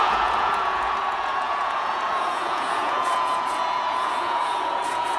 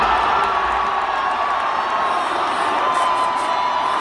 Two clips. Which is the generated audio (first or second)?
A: first